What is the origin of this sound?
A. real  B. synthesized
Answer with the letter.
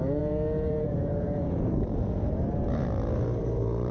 B